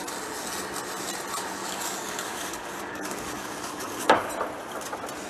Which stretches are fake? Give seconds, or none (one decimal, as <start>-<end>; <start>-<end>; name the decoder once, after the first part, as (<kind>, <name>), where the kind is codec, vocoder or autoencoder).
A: 1.6-4.3 (codec, DAC)

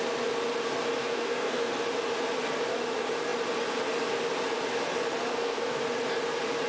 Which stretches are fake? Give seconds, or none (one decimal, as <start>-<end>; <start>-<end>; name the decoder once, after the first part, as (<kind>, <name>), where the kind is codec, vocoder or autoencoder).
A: 1.0-1.7 (codec, SNAC); 5.3-5.8

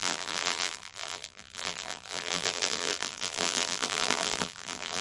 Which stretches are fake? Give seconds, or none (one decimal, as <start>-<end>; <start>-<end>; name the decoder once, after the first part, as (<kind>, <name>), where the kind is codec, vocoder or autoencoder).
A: 0.0-5.0 (vocoder, BigVGAN v2)

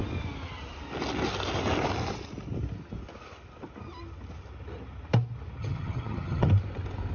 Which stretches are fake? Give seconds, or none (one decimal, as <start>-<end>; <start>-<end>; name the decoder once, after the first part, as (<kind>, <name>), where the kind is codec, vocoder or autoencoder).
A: 5.6-6.5 (vocoder, HiFi-GAN)